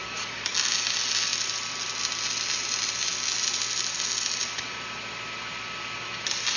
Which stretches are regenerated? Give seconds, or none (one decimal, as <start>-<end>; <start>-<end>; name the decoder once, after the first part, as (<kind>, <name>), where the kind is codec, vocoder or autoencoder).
0.0-0.5 (codec, DAC)